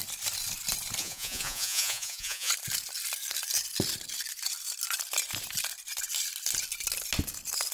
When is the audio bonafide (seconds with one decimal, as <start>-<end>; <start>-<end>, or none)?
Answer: 0.0-1.0; 2.5-7.7